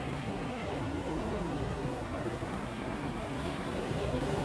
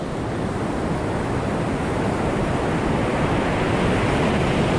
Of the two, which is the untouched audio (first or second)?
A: second